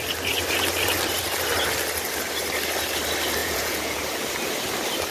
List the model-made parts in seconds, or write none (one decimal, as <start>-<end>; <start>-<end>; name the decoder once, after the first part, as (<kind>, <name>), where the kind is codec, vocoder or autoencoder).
3.4-4.0 (vocoder, Vocos)